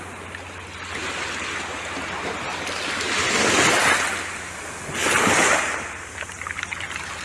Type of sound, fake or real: real